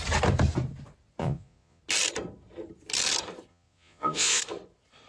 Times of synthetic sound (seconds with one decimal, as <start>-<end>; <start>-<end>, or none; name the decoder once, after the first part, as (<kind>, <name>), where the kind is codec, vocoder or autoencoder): 1.2-1.8 (vocoder, Vocos); 3.5-4.4